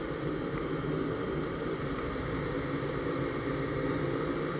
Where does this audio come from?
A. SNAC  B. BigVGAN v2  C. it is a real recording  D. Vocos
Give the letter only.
C